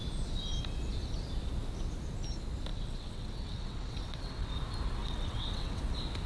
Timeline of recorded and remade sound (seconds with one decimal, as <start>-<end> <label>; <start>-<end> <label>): 0.0-2.7 recorded; 2.7-4.5 remade; 4.5-5.0 recorded; 5.0-5.8 remade; 5.8-6.3 recorded